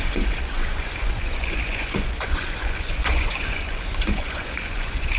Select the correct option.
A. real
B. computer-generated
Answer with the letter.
B